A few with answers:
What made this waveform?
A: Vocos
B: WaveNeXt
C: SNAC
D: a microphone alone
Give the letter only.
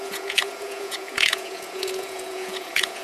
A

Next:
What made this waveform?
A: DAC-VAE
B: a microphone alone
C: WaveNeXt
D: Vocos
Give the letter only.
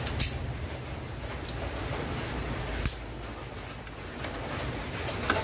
B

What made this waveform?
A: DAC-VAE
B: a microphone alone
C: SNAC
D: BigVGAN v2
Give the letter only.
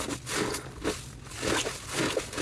B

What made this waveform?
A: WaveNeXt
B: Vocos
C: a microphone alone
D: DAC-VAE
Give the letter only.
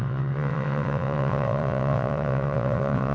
A